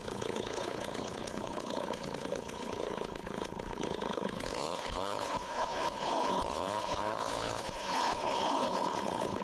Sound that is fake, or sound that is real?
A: fake